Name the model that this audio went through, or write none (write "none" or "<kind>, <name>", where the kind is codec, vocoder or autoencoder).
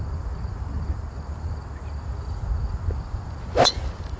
none